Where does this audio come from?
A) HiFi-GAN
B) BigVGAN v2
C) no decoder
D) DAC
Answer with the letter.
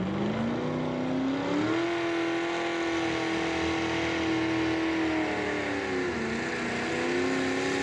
C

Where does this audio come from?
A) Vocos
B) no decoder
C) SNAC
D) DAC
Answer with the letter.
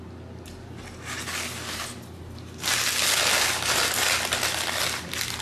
B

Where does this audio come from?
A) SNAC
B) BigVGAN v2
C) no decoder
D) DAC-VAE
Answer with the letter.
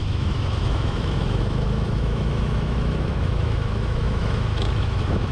D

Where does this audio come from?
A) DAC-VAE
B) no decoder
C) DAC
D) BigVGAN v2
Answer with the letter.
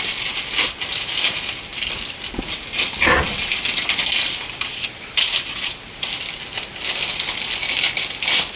B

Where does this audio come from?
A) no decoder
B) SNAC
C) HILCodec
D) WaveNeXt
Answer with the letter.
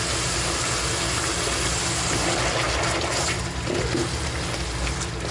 A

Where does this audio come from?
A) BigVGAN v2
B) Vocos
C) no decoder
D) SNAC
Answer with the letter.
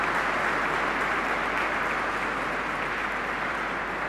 C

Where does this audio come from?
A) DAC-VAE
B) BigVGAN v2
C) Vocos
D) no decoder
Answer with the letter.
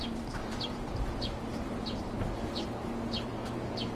B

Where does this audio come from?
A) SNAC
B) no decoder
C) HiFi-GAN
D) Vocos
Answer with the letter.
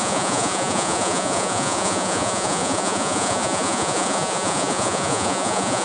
D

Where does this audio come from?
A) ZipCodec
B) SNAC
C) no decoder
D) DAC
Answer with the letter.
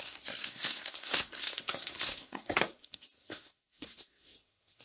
B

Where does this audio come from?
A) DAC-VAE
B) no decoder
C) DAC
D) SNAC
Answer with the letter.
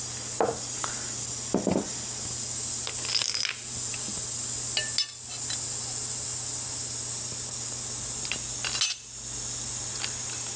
B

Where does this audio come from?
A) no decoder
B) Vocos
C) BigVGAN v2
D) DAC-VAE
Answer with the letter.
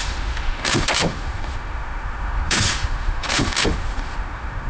D